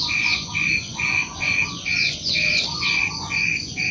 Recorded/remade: remade